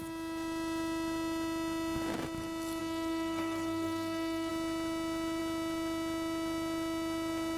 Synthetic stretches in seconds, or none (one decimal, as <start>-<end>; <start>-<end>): 2.8-4.5